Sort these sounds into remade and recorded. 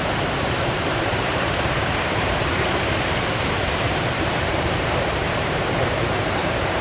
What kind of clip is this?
remade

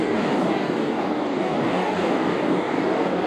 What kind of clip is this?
remade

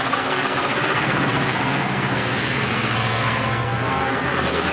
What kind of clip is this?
remade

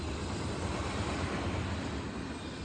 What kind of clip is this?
recorded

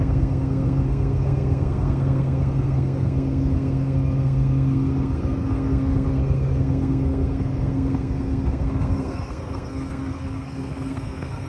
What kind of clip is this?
remade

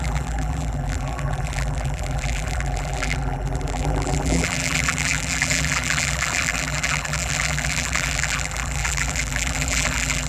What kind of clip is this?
remade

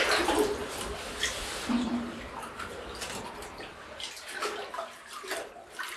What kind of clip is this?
recorded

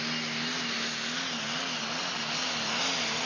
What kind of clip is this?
recorded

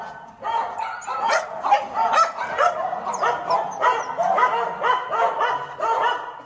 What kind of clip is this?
recorded